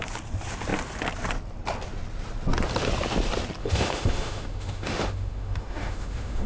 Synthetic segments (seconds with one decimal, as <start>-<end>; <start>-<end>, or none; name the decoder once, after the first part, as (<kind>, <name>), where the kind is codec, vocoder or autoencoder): 3.6-6.5 (autoencoder, DAC-VAE)